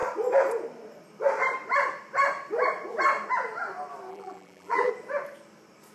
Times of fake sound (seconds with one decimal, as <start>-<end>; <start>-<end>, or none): 4.1-4.9